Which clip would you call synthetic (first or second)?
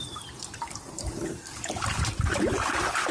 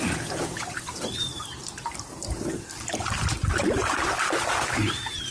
second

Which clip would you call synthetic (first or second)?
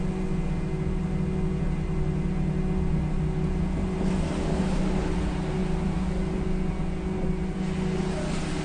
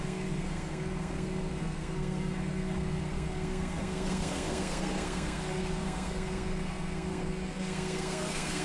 second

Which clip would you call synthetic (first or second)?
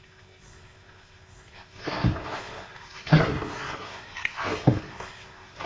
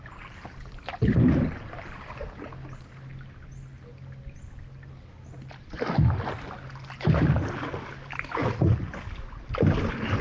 first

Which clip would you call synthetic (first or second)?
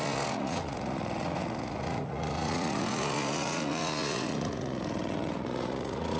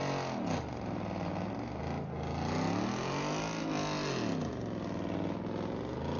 first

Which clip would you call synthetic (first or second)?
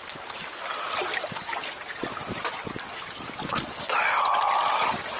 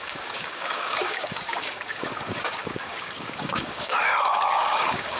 second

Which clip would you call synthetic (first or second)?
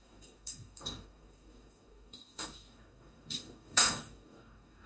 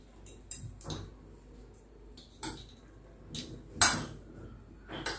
first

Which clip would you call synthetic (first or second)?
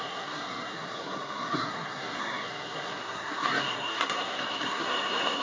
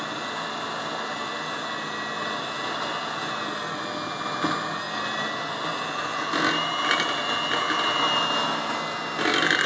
first